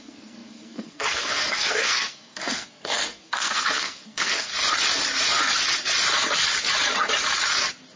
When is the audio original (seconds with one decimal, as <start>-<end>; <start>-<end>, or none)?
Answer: 4.5-8.0